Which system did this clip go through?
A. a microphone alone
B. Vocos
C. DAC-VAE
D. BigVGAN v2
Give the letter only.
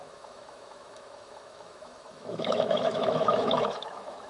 C